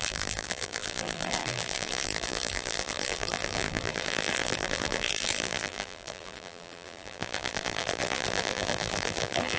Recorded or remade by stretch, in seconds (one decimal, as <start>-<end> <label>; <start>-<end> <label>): 0.0-9.6 remade